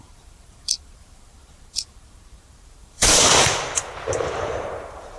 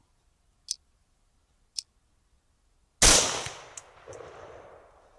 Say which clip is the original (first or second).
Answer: second